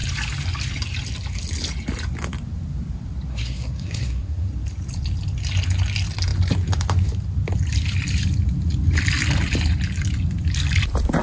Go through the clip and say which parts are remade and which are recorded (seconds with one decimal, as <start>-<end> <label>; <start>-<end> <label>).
0.0-3.3 recorded; 3.3-4.5 remade; 4.5-11.2 recorded